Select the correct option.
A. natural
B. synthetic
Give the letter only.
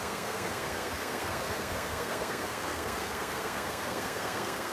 B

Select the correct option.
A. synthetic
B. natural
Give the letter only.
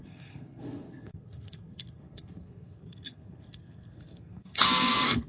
A